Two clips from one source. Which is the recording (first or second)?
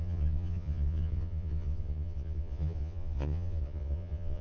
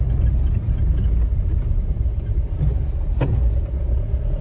second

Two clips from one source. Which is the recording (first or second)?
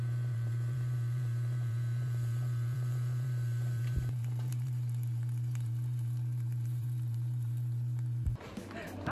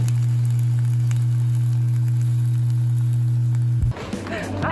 second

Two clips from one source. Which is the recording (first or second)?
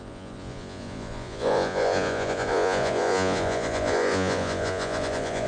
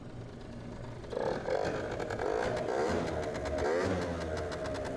second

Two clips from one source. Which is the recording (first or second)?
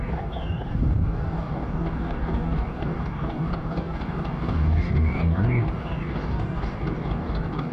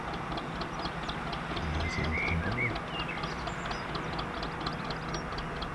second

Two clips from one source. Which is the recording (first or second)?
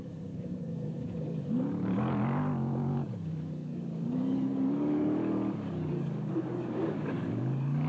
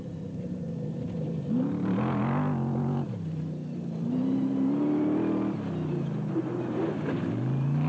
second